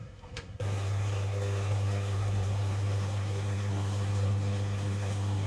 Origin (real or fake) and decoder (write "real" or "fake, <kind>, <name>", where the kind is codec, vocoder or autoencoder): fake, codec, SNAC